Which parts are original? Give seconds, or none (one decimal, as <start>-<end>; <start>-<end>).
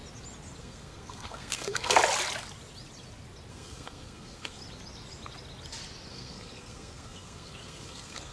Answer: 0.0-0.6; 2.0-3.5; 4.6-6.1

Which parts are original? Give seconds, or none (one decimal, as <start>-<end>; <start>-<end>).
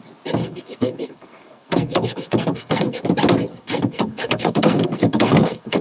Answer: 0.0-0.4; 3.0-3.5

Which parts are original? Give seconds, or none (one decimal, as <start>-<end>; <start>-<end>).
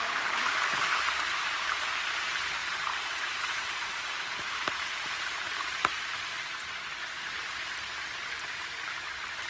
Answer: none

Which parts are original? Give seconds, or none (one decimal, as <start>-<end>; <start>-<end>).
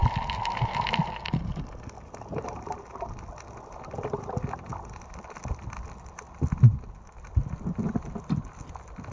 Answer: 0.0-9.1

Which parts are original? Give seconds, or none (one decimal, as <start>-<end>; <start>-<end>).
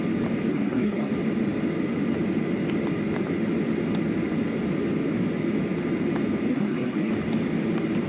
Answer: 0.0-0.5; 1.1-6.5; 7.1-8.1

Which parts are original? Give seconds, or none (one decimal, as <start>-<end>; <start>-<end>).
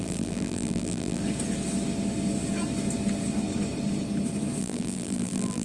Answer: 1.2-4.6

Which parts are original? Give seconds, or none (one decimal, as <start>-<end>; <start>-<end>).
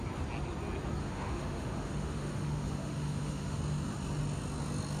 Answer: 0.0-1.0; 3.6-5.0